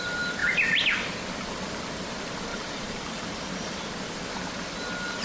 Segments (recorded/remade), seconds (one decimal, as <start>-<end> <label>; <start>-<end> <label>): 0.0-0.4 recorded; 0.4-1.1 remade; 1.1-2.5 recorded; 2.5-3.9 remade; 3.9-5.2 recorded